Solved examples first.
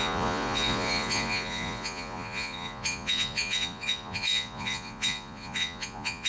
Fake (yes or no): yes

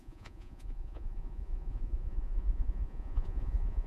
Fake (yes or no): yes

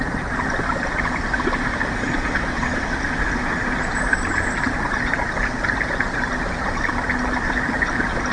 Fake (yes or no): no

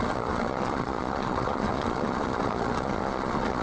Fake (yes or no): yes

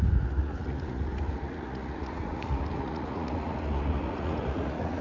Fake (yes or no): yes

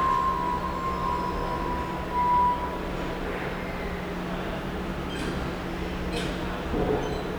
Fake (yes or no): no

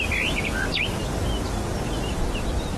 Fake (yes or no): no